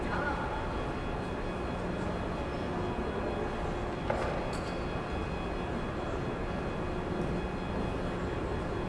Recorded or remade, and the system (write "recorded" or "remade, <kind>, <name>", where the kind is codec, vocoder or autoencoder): recorded